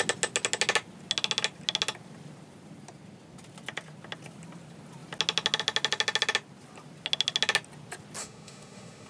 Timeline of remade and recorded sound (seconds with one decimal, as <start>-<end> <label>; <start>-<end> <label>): 0.0-8.2 recorded; 8.2-9.1 remade